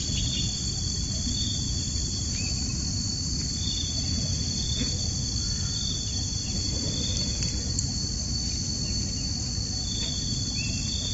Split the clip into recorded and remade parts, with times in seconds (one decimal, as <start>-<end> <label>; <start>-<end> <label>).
0.0-4.3 recorded; 4.3-4.8 remade; 4.8-6.4 recorded; 6.4-7.3 remade; 7.3-11.1 recorded